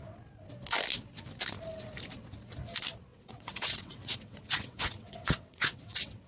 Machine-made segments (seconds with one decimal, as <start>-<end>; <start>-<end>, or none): 3.1-6.3